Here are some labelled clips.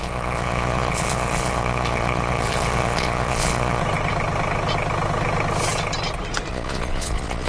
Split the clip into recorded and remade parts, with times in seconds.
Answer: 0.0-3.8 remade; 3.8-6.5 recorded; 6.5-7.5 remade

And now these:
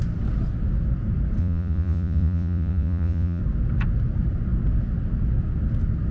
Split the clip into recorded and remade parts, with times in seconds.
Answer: 0.0-1.4 recorded; 1.4-3.4 remade; 3.4-6.1 recorded

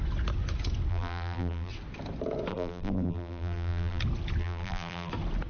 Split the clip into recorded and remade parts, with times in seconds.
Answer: 0.0-0.9 recorded; 0.9-1.7 remade; 1.7-2.5 recorded; 2.5-4.0 remade; 4.0-4.4 recorded; 4.4-5.1 remade; 5.1-5.5 recorded

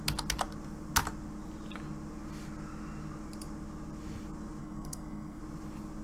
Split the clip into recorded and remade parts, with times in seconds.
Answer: 0.0-4.6 recorded; 4.6-5.4 remade; 5.4-6.0 recorded